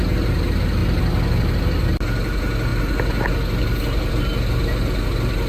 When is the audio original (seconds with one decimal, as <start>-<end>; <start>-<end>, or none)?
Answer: 0.0-5.5